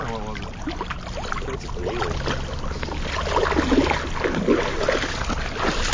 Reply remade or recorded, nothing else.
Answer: recorded